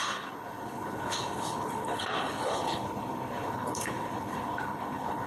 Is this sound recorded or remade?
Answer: remade